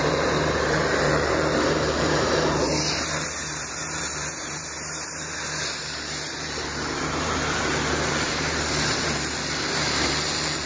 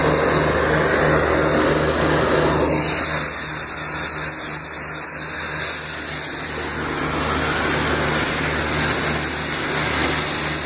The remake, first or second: first